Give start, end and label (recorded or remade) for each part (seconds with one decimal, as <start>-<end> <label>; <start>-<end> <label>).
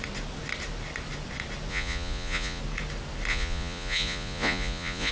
0.0-1.7 recorded; 1.7-2.6 remade; 2.6-3.3 recorded; 3.3-5.1 remade